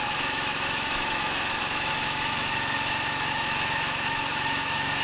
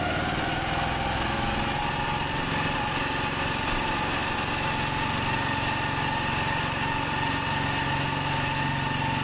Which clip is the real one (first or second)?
second